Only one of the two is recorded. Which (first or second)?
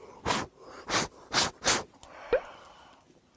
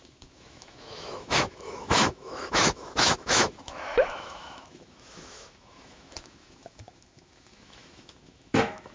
first